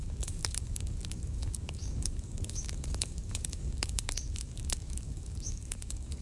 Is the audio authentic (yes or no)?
no